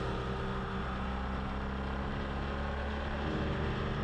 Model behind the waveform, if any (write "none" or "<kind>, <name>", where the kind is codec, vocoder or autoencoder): none